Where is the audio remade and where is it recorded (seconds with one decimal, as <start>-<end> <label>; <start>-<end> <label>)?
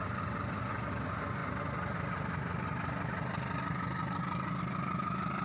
0.0-5.4 recorded